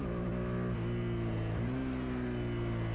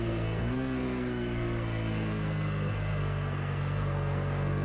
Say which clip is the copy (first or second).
second